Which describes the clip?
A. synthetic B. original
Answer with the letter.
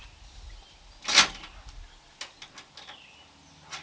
B